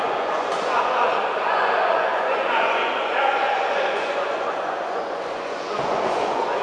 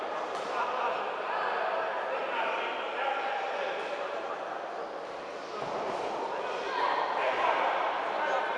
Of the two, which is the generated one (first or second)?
first